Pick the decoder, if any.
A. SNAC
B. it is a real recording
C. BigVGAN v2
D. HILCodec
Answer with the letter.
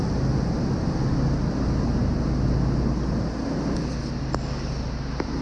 B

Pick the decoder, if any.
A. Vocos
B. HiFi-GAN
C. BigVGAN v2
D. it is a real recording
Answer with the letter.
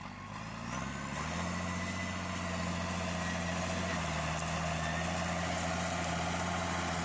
D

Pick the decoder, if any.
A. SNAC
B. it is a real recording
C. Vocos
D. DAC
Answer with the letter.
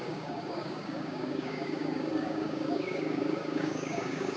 D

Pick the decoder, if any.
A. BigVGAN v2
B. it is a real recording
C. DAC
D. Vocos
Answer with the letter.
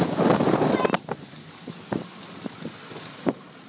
B